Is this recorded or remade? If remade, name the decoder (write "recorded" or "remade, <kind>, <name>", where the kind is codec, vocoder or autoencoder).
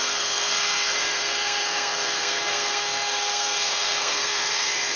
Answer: remade, codec, SNAC